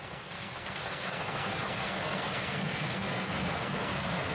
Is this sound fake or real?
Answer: fake